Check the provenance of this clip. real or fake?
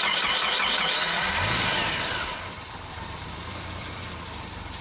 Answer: fake